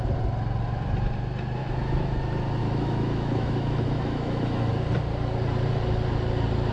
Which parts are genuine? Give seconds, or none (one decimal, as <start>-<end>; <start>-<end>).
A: 0.0-1.6; 2.2-2.6; 4.7-6.7

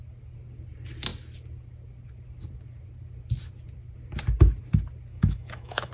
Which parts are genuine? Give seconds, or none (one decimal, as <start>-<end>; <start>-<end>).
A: 0.0-5.1

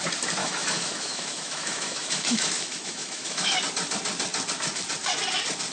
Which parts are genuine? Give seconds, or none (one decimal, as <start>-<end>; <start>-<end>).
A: 0.0-0.4; 3.6-5.7